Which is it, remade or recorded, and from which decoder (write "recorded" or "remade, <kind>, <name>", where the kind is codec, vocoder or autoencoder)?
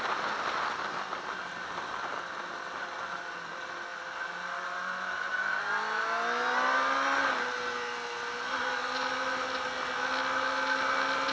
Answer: recorded